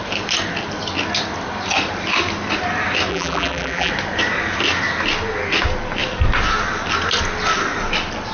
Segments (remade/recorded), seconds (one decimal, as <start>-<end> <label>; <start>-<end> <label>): 0.0-3.1 recorded; 3.1-3.9 remade; 3.9-8.3 recorded